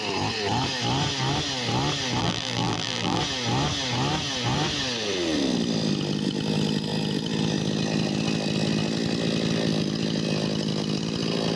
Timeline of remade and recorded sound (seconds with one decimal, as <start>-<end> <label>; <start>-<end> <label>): 0.0-2.2 recorded; 2.2-3.2 remade; 3.2-11.6 recorded